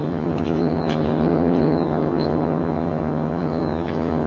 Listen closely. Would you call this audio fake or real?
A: fake